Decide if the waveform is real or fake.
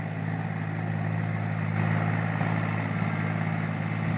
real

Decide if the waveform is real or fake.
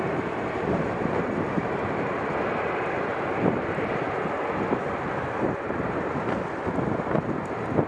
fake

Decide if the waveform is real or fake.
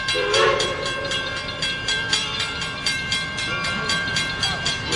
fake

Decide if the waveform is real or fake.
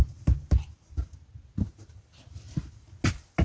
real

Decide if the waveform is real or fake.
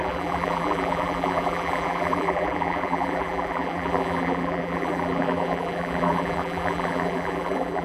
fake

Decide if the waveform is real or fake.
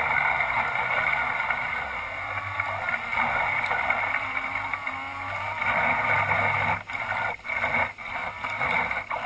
real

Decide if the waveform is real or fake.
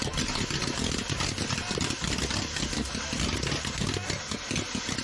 real